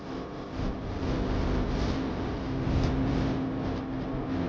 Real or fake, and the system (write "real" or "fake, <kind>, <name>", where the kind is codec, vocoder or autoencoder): real